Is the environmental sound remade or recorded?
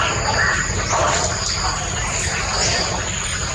recorded